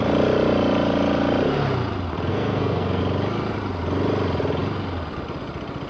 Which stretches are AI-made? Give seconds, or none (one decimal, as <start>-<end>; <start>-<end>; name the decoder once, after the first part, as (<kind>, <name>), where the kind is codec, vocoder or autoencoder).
2.3-3.0 (codec, SNAC)